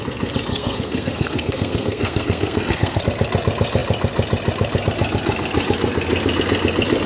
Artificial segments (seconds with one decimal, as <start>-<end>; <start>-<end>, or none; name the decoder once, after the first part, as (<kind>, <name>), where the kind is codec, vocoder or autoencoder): 0.5-3.0 (codec, SNAC)